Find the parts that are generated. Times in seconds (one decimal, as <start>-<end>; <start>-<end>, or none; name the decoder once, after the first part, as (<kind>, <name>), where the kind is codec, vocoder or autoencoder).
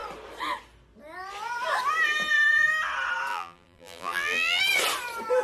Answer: 3.3-4.6 (vocoder, BigVGAN v2)